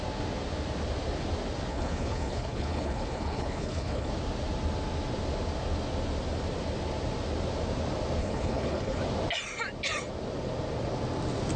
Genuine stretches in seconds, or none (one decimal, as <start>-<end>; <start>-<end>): 0.0-1.7; 4.1-8.2; 9.0-11.6